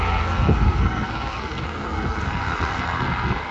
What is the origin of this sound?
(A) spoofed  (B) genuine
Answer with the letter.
A